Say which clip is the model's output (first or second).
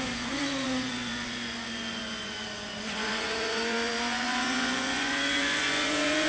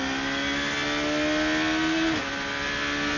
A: first